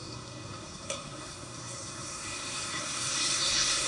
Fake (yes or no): yes